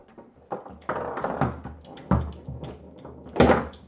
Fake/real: real